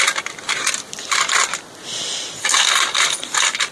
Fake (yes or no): no